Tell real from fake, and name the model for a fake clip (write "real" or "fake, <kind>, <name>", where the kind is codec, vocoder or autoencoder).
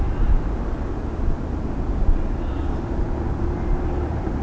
real